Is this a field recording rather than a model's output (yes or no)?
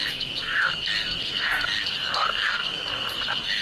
no